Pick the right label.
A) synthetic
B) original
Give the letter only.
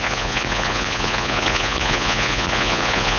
A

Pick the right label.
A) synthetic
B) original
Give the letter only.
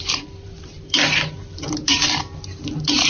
A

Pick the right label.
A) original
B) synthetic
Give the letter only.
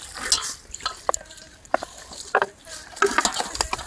A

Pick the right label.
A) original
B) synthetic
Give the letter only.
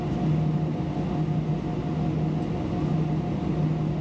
A